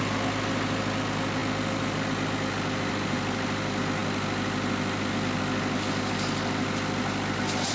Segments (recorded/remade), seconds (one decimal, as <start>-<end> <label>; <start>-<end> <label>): 0.0-7.7 recorded